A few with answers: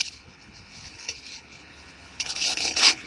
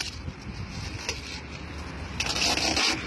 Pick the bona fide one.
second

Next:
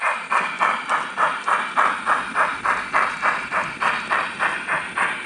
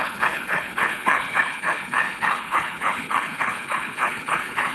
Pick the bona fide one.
first